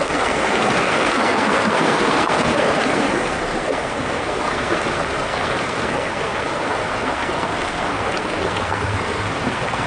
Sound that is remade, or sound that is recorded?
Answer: remade